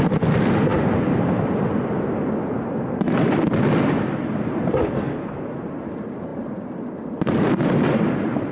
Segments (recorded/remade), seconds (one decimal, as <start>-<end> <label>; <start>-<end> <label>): 0.0-8.5 recorded